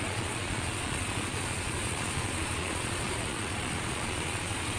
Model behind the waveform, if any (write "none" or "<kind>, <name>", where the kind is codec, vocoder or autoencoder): vocoder, Vocos